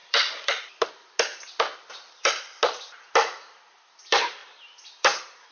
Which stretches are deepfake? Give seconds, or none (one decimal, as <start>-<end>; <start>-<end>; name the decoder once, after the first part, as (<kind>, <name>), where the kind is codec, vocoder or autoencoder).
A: 0.0-0.5 (vocoder, BigVGAN v2); 4.4-5.5